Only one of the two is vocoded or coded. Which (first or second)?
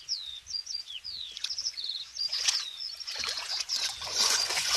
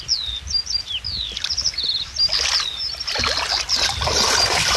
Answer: first